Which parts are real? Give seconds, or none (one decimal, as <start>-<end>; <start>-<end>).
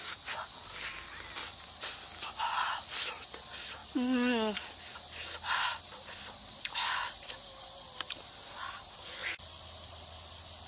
0.0-10.7